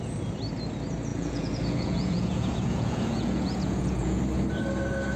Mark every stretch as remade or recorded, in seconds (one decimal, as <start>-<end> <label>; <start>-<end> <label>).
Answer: 0.0-1.1 recorded; 1.1-4.2 remade; 4.2-5.2 recorded